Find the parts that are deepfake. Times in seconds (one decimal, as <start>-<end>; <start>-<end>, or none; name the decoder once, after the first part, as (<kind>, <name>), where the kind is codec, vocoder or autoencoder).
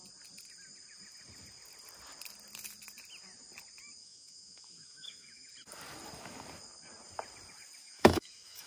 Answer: 4.0-5.5 (autoencoder, DAC-VAE); 7.8-8.7